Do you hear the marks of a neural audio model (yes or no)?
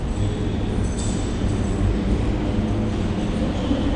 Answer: no